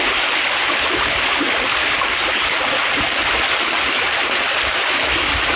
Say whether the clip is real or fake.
real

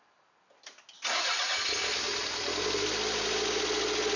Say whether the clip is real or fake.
real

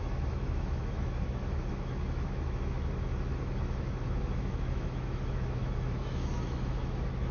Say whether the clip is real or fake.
fake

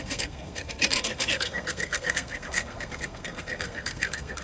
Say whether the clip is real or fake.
fake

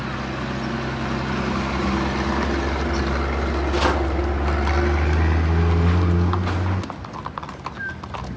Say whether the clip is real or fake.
real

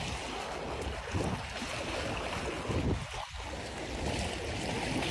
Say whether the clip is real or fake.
real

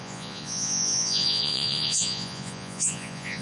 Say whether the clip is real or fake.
fake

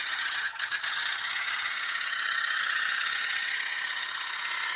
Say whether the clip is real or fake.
fake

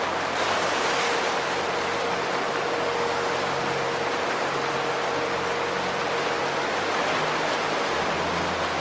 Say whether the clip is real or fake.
real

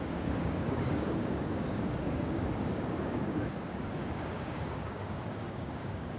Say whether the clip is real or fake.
fake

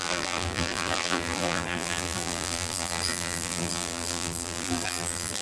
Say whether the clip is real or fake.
fake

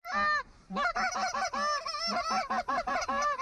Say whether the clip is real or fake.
real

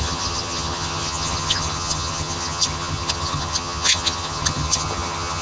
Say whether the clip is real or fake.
fake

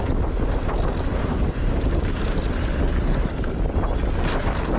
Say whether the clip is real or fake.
real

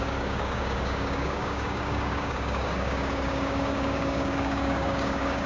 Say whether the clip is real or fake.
fake